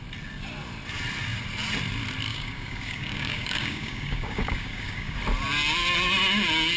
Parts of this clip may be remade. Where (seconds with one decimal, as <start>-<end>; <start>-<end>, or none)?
2.3-5.2

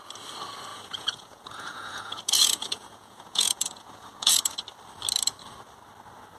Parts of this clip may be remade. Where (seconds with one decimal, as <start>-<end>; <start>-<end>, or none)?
0.7-4.5

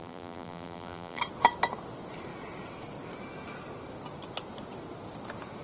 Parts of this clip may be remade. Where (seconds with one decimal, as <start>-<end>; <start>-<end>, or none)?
0.0-1.2

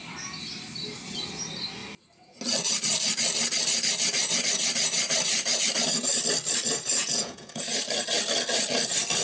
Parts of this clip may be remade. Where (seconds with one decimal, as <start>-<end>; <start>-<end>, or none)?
7.0-7.6

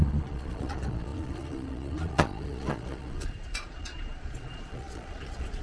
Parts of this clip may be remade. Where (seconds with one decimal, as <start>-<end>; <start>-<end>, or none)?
0.0-5.6